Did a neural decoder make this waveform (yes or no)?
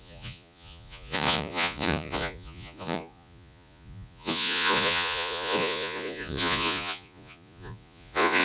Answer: yes